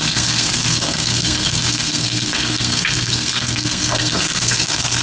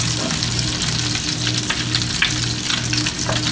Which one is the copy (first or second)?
first